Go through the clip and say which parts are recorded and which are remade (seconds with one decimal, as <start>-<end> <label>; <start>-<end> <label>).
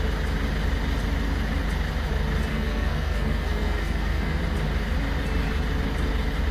0.0-2.5 recorded; 2.5-4.4 remade; 4.4-6.5 recorded